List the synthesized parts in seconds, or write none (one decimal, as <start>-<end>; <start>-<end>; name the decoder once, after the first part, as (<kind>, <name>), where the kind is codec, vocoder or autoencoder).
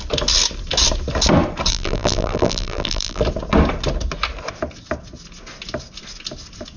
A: 1.7-3.2 (vocoder, BigVGAN v2)